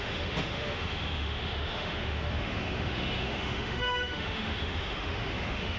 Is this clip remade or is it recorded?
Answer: remade